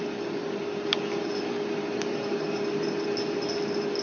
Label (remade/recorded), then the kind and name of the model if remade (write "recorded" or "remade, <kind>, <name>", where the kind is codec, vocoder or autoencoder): recorded